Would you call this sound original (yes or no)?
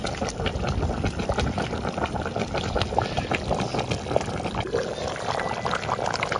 yes